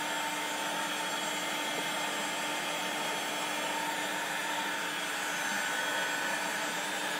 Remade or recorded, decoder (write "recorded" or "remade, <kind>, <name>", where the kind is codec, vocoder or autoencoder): recorded